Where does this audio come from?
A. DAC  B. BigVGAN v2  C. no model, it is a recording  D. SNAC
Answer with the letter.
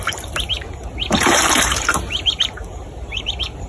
B